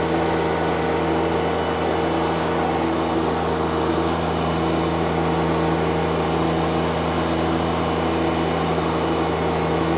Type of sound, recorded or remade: recorded